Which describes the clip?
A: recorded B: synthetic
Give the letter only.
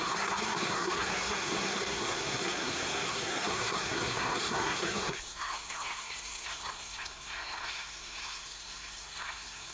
B